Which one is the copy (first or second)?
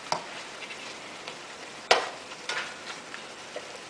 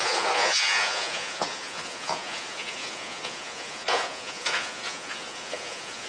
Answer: second